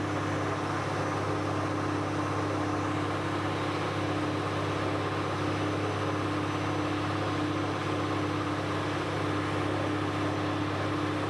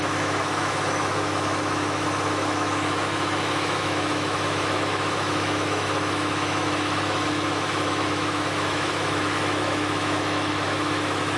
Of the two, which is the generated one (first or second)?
second